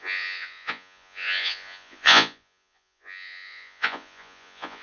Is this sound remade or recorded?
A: remade